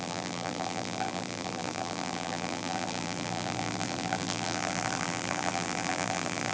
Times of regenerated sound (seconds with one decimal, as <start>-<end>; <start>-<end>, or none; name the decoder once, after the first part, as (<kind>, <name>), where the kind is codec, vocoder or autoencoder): 0.0-6.5 (vocoder, BigVGAN v2)